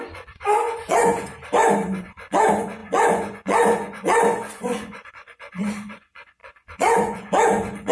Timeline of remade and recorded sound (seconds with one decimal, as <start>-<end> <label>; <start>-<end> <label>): 0.0-1.3 remade; 1.3-2.0 recorded; 2.0-7.9 remade